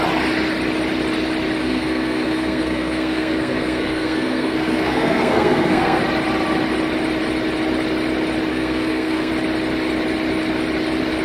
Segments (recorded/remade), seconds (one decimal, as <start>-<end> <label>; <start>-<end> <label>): 0.0-1.6 recorded; 1.6-6.0 remade; 6.0-8.5 recorded; 8.5-9.3 remade; 9.3-11.2 recorded